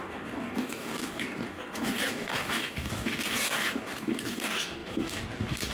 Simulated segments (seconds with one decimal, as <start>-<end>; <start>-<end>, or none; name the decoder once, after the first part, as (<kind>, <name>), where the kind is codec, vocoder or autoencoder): 0.0-5.7 (codec, DAC)